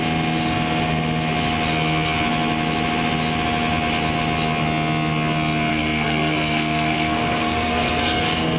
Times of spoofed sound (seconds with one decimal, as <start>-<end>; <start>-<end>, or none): 5.7-8.2